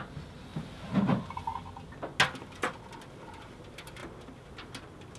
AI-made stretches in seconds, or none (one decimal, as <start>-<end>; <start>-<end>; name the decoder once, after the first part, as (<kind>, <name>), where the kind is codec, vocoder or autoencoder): none